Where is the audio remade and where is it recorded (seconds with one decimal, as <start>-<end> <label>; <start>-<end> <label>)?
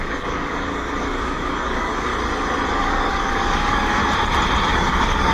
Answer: 0.0-2.1 remade; 2.1-2.7 recorded; 2.7-4.0 remade; 4.0-4.7 recorded; 4.7-5.3 remade